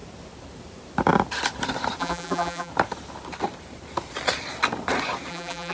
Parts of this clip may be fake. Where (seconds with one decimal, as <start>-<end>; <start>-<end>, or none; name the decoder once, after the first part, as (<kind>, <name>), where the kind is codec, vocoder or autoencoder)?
2.0-2.7 (vocoder, BigVGAN v2); 5.3-5.7